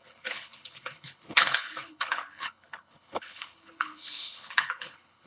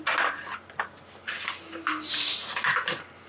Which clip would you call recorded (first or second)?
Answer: second